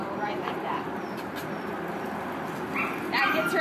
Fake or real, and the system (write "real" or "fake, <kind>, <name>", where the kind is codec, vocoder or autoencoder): real